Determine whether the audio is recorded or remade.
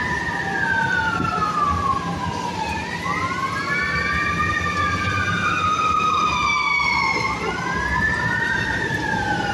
recorded